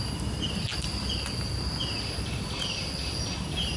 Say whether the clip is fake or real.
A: real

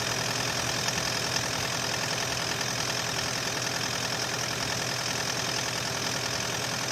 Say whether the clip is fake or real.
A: real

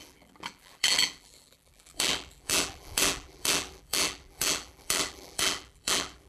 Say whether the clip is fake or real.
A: fake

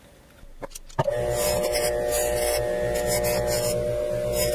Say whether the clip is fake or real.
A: real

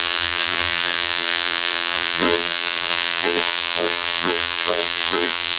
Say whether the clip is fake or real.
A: fake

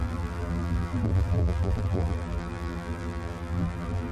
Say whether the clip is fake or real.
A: fake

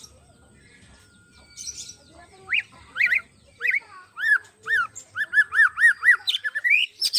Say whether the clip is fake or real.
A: fake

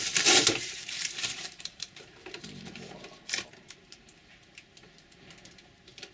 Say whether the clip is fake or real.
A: fake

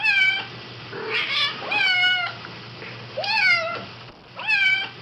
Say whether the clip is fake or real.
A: real